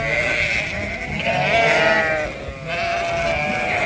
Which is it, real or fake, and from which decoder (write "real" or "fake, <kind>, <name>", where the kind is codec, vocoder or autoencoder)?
real